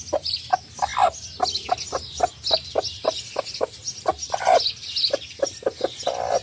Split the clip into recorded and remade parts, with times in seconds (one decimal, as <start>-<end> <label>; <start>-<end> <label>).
0.0-6.4 recorded